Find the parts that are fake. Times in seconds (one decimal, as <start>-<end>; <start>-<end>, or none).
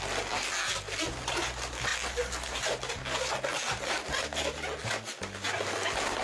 none